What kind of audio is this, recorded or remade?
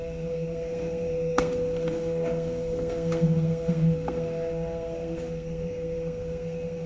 remade